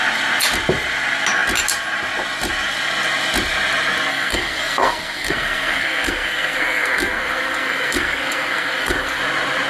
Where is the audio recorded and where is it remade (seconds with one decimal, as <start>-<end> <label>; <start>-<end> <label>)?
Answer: 0.0-4.1 recorded; 4.1-9.2 remade; 9.2-9.7 recorded